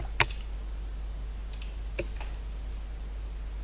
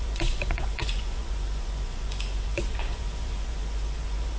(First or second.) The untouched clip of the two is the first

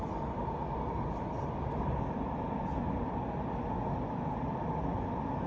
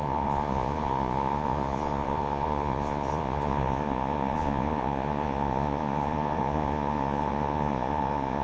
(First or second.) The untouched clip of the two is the first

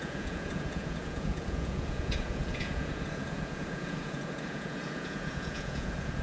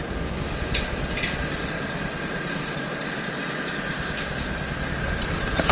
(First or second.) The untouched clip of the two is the second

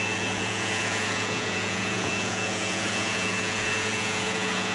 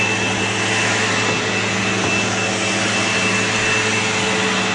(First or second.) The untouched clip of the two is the second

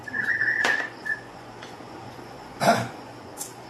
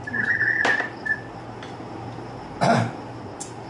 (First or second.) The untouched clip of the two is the second